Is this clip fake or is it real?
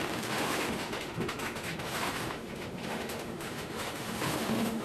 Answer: fake